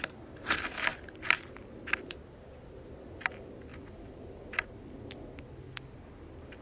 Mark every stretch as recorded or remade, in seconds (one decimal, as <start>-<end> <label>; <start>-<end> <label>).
0.0-0.9 remade; 0.9-2.0 recorded; 2.0-3.7 remade; 3.7-5.7 recorded; 5.7-6.6 remade